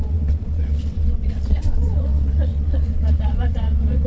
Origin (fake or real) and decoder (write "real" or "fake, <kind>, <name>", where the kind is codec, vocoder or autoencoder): fake, vocoder, WaveNeXt